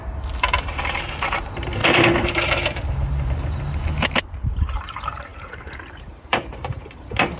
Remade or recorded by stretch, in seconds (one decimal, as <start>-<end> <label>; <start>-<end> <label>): 0.0-7.4 remade